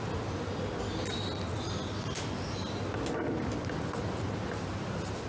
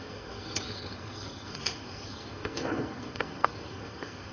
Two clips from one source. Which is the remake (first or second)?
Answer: second